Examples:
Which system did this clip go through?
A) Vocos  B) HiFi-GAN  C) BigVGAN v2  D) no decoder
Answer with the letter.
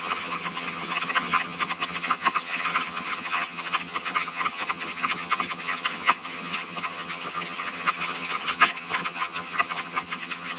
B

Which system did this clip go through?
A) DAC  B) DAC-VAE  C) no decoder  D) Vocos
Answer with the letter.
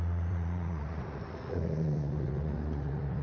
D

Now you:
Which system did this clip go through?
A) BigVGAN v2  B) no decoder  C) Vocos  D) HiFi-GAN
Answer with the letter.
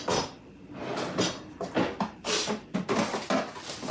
B